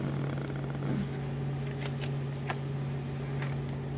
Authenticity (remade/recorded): recorded